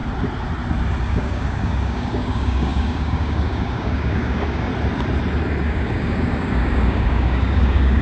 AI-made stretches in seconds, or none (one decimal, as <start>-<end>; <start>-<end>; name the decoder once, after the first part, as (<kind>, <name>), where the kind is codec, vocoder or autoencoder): 1.0-4.7 (codec, DAC); 5.6-8.0